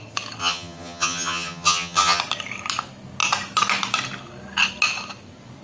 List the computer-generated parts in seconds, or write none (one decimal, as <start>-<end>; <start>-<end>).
0.4-2.2